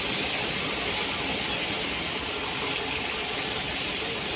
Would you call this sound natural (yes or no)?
yes